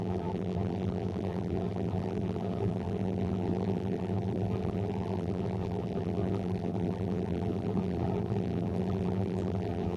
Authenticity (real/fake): fake